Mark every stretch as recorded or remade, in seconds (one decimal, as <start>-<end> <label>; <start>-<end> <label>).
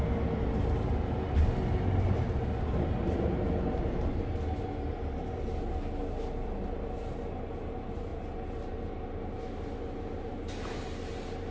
0.0-11.5 recorded